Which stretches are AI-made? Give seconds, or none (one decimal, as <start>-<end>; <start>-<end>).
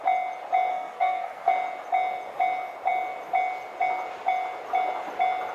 0.7-1.5